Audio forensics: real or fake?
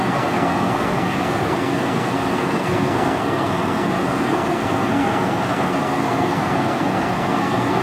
fake